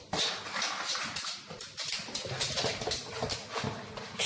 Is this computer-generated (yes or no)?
no